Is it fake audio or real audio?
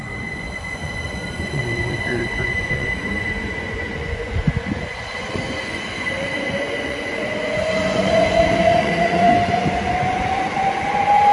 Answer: fake